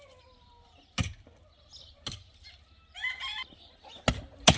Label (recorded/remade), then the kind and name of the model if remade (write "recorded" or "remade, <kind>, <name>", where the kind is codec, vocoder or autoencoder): recorded